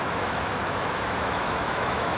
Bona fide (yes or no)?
no